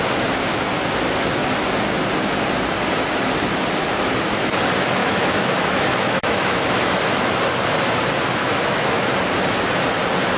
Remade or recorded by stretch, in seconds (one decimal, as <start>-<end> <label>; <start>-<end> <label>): 0.0-5.0 recorded; 5.0-7.0 remade; 7.0-8.4 recorded; 8.4-9.1 remade; 9.1-10.4 recorded